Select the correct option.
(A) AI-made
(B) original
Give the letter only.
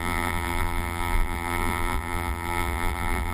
A